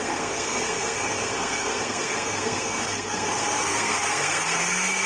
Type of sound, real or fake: fake